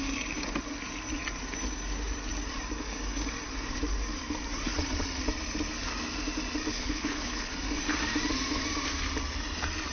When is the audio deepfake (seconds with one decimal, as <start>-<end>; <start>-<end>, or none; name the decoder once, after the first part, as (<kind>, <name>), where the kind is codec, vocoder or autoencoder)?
6.7-7.5 (codec, HILCodec)